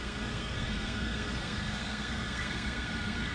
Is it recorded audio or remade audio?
remade